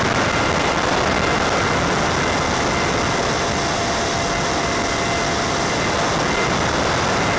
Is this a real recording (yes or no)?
yes